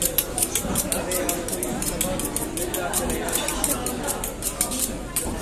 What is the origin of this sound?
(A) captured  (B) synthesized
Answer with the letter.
A